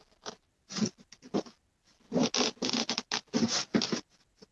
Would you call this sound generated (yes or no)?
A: no